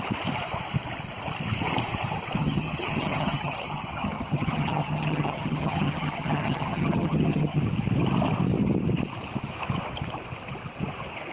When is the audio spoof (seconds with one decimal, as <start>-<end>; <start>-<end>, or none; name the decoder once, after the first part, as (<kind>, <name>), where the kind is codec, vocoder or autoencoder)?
2.4-7.6 (vocoder, HiFi-GAN)